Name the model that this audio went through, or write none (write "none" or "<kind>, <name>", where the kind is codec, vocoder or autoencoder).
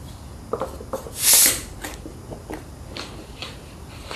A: none